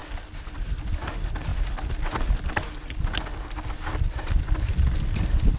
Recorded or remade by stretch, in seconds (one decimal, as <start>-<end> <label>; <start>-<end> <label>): 0.0-5.6 recorded